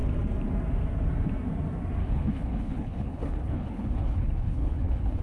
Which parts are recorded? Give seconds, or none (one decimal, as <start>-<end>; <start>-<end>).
0.0-2.0